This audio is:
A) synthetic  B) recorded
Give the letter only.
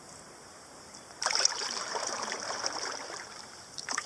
A